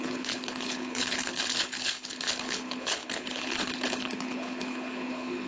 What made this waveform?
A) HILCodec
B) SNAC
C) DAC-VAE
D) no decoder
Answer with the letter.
A